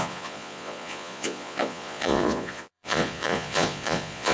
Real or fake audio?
fake